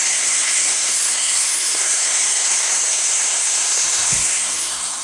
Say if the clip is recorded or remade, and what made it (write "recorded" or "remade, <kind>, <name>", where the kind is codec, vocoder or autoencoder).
remade, codec, SNAC